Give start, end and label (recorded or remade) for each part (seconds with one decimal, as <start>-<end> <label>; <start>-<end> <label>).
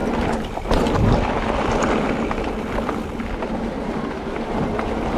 0.0-5.2 remade